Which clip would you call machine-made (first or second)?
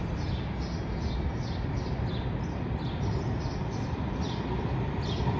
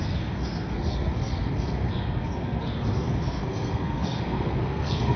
second